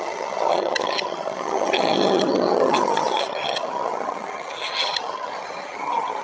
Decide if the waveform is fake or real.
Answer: fake